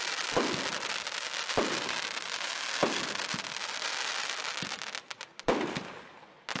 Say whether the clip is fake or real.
real